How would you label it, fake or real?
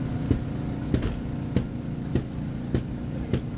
real